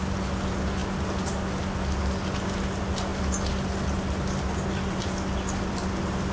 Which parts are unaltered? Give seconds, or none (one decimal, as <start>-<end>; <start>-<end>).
0.0-6.3